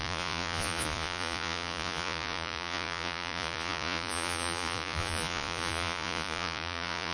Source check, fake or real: fake